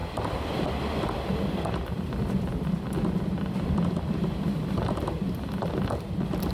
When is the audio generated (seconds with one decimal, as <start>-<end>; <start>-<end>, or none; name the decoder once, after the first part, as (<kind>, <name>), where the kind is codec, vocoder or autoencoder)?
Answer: none